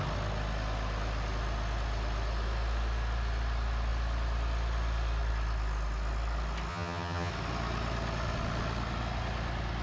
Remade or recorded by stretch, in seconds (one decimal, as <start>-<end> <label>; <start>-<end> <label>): 0.0-6.7 recorded; 6.7-7.3 remade; 7.3-9.8 recorded